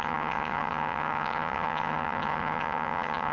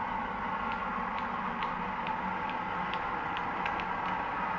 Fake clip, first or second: first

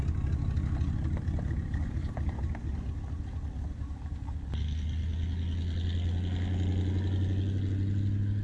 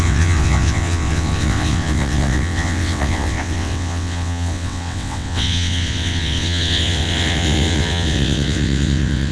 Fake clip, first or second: second